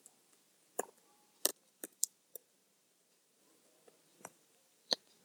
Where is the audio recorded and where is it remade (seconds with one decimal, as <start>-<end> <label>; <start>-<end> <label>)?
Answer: 0.0-1.5 recorded; 1.5-3.4 remade; 3.4-4.1 recorded; 4.1-5.2 remade